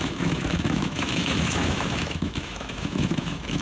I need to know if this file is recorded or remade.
remade